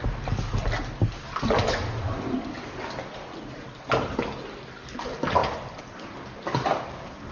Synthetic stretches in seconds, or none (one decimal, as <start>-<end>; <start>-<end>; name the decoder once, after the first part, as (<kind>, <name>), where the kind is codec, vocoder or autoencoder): none